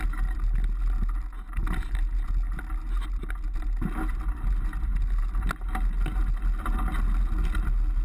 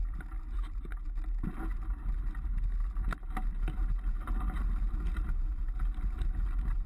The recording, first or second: first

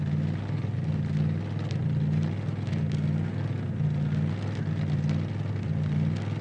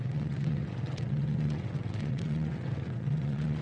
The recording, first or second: first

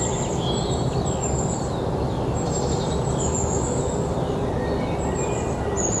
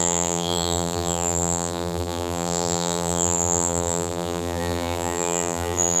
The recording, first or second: first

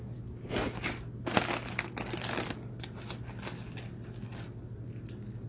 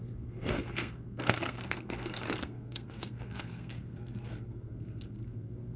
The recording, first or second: first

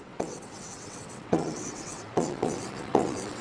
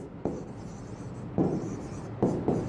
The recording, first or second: second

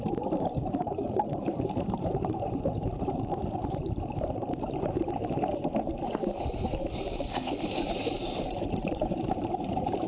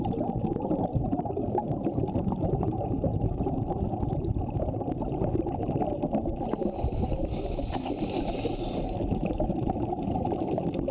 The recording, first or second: second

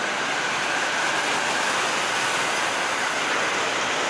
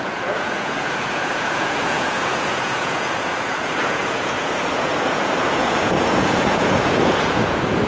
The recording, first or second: first